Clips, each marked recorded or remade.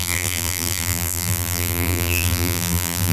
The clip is remade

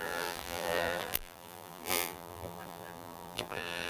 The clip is remade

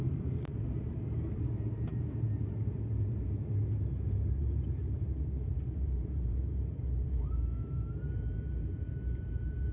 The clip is remade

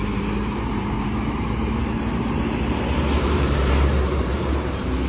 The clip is remade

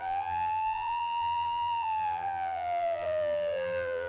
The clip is remade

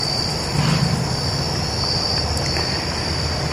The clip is recorded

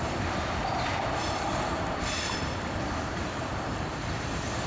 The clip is remade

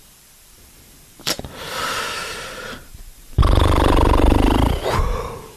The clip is remade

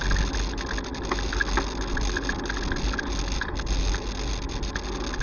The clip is recorded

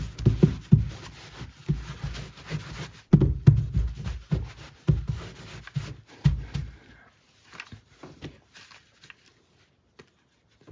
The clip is recorded